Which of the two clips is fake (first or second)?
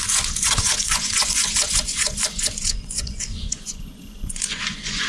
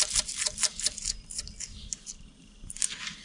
first